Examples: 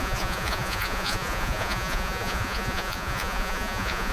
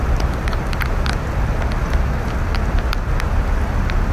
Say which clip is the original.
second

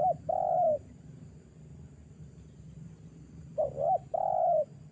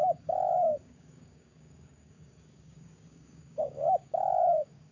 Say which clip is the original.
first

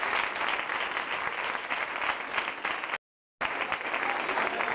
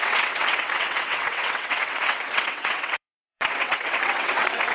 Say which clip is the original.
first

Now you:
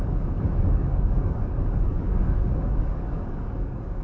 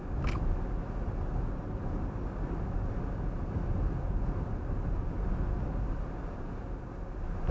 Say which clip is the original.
second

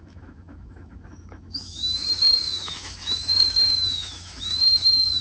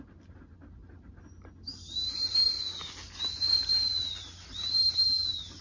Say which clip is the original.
second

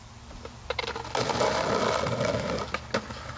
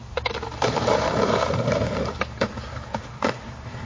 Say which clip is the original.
first